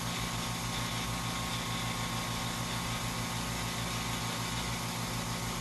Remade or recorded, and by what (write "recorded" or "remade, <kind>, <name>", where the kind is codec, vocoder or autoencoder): recorded